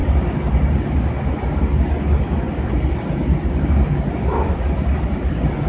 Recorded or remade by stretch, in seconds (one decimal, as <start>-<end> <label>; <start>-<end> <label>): 0.0-5.7 recorded